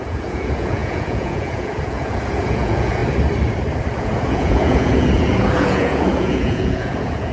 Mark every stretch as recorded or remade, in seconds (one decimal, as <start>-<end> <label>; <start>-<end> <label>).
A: 0.0-3.0 remade; 3.0-4.0 recorded; 4.0-7.3 remade